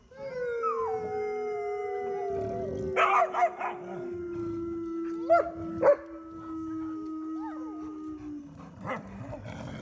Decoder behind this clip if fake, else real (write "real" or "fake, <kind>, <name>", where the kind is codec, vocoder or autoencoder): real